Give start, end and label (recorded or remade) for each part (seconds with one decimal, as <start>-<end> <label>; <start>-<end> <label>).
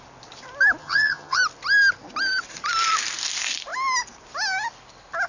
0.0-0.8 recorded; 0.8-1.4 remade; 1.4-5.3 recorded